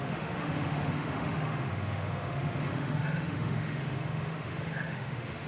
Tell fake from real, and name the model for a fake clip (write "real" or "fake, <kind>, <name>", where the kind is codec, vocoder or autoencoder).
fake, autoencoder, DAC-VAE